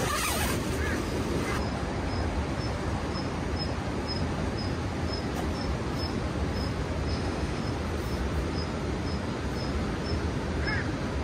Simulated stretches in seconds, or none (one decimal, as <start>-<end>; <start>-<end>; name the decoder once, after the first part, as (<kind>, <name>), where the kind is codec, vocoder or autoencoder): 7.1-7.6 (autoencoder, DAC-VAE)